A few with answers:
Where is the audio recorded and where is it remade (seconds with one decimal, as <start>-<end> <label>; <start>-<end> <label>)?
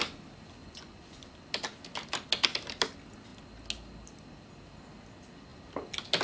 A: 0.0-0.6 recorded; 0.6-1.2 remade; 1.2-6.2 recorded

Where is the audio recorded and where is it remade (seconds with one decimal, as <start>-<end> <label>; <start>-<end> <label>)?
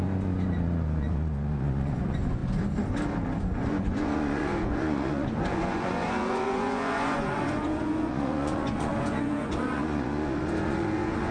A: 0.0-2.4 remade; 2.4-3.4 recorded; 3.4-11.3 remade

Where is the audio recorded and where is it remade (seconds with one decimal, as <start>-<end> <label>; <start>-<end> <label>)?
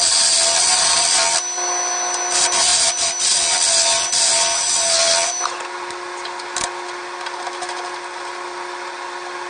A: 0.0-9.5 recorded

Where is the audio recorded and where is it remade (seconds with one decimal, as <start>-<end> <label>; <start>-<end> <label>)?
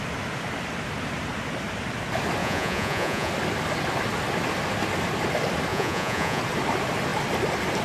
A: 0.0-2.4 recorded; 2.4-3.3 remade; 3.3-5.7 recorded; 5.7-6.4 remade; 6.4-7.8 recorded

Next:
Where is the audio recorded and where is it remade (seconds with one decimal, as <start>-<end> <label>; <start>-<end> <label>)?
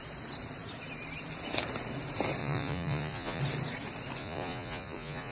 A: 0.0-2.4 recorded; 2.4-3.4 remade; 3.4-4.2 recorded; 4.2-5.3 remade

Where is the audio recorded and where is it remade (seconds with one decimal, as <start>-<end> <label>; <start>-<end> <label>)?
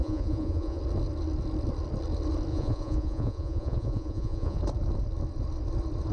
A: 0.0-0.8 remade; 0.8-2.5 recorded; 2.5-4.6 remade; 4.6-6.1 recorded